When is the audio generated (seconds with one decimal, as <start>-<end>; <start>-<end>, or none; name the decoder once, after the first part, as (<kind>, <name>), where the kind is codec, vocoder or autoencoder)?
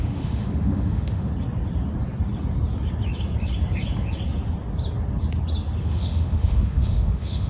0.0-1.3 (autoencoder, DAC-VAE); 5.8-7.5